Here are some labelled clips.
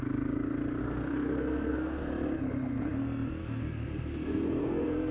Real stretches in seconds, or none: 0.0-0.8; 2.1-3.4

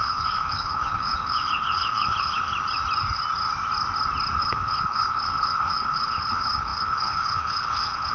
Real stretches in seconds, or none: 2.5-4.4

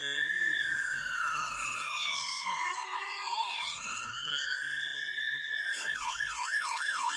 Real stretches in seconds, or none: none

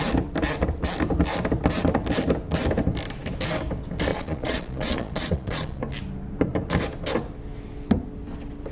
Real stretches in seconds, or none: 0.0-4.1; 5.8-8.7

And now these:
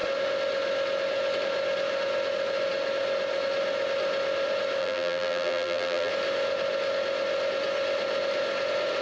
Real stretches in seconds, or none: 0.0-4.8; 6.1-9.0

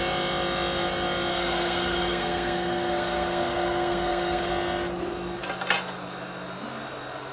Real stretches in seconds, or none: 0.0-1.3; 4.5-7.3

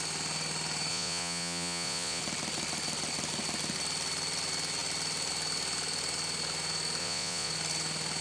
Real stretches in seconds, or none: 0.0-0.9; 2.2-7.0; 7.5-8.2